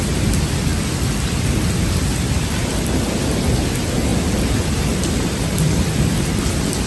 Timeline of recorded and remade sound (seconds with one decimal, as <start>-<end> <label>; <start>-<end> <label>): 0.0-6.9 recorded

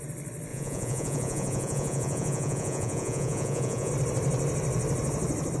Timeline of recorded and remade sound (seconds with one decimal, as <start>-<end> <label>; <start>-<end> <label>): 0.0-0.5 recorded; 0.5-3.9 remade; 3.9-5.6 recorded